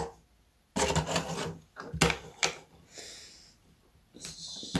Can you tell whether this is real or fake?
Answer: real